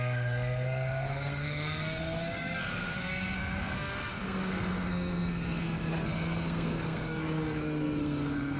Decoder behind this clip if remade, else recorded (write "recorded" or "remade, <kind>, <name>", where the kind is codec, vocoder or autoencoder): remade, codec, SNAC